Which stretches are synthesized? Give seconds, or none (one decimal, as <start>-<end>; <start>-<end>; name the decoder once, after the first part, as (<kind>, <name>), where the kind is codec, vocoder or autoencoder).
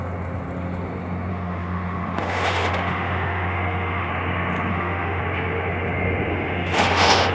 1.3-4.1 (autoencoder, DAC-VAE); 4.7-5.2; 6.3-7.3